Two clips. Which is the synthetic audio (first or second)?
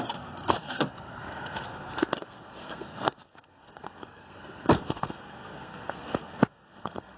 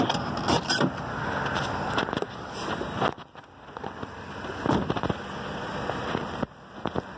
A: first